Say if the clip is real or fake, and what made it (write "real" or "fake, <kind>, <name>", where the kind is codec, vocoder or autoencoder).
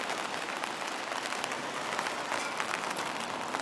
real